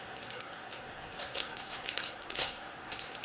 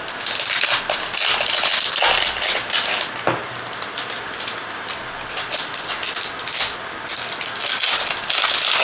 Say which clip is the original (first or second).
second